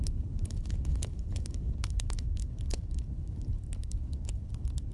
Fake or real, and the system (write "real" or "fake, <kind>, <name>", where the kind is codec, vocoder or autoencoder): fake, codec, HILCodec